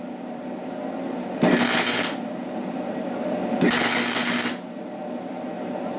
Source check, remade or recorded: recorded